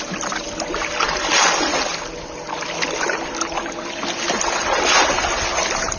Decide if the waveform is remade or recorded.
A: recorded